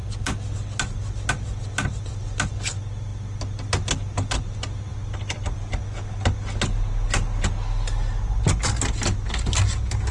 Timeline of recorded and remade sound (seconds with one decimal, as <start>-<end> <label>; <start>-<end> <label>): 0.0-10.1 recorded